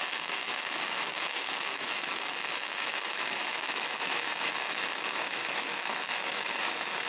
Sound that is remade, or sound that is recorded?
remade